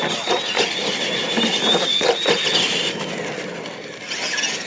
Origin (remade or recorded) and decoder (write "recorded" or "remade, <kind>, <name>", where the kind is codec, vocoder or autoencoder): recorded